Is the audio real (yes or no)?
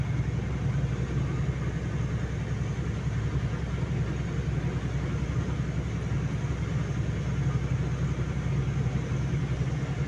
yes